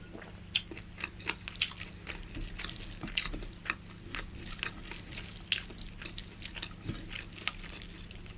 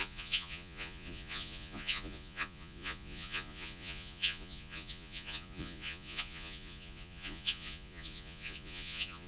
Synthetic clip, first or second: second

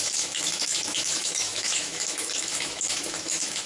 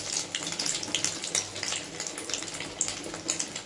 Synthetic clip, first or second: first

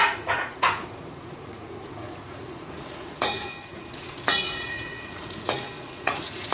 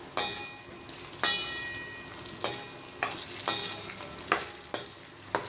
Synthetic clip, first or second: first